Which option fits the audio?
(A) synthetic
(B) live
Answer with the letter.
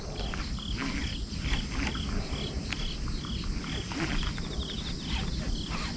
B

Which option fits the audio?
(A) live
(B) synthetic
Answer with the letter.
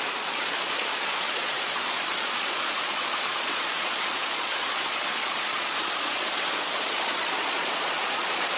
B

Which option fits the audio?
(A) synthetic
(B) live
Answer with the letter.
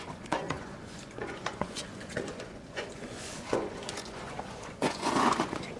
A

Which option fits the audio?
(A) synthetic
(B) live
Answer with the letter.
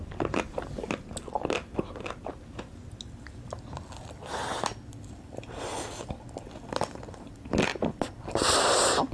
B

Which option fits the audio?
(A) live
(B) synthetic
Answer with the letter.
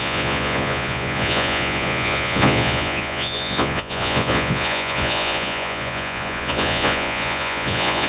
B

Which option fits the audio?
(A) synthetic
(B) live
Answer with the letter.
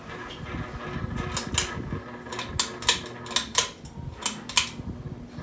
B